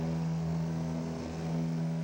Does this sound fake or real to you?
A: fake